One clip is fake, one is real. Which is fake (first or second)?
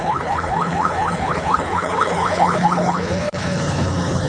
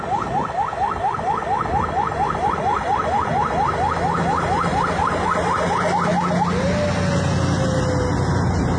first